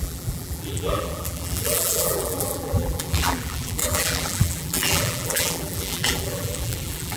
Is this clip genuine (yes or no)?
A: no